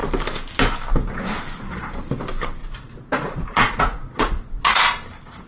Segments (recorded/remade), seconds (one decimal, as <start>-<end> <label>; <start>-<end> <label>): 0.0-2.6 recorded; 2.6-4.8 remade; 4.8-5.5 recorded